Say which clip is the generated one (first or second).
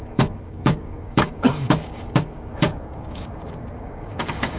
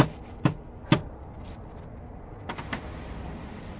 first